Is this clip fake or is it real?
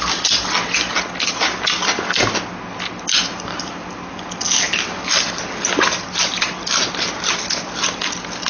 real